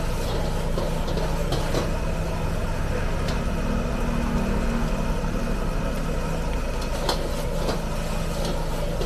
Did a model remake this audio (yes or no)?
no